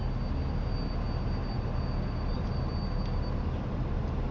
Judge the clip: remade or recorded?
recorded